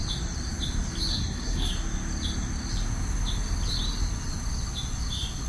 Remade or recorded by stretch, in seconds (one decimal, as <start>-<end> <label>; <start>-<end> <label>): 0.0-1.1 recorded; 1.1-1.7 remade; 1.7-5.5 recorded